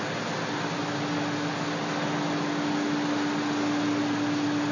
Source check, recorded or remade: recorded